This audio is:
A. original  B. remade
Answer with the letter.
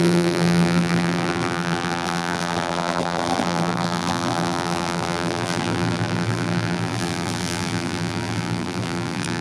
B